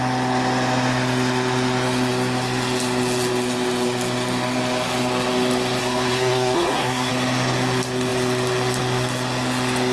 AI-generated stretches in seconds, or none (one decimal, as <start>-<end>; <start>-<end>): 5.8-7.1

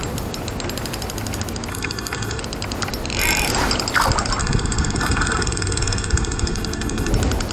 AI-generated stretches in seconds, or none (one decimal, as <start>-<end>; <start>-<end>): 1.7-2.4; 4.4-7.1

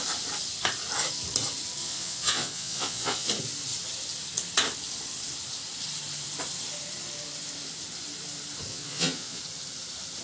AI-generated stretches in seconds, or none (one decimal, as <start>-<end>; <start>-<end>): 1.8-3.3; 8.7-9.4

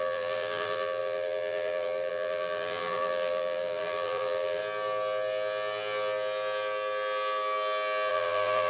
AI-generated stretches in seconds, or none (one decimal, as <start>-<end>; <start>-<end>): 0.0-4.6; 8.1-8.7

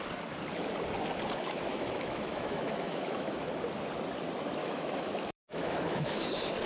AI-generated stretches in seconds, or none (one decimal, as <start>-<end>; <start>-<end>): 1.7-3.5; 4.6-6.3